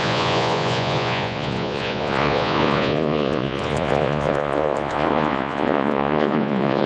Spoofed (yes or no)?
yes